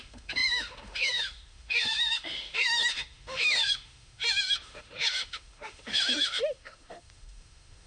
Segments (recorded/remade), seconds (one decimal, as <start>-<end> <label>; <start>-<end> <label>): 0.0-7.9 remade